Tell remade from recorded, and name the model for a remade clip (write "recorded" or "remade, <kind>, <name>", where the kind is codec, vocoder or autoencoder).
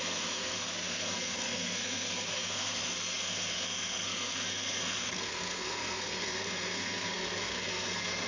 remade, codec, SNAC